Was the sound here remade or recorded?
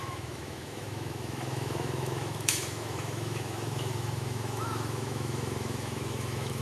remade